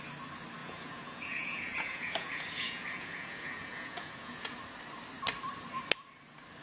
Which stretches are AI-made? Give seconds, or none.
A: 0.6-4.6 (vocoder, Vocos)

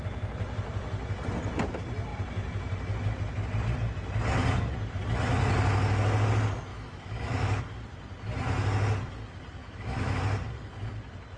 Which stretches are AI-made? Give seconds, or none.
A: 6.7-7.6 (autoencoder, DAC-VAE); 9.6-10.2